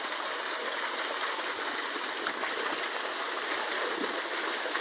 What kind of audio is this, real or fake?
real